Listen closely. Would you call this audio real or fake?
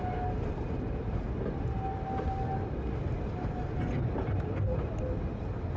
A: real